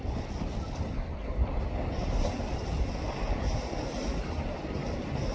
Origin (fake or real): real